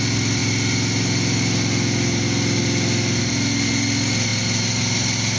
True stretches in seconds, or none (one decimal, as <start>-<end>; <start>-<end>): 0.0-5.4